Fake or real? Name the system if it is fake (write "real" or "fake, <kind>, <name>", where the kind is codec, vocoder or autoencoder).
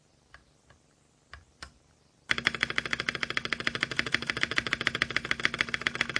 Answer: real